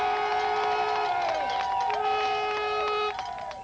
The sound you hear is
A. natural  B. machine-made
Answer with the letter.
A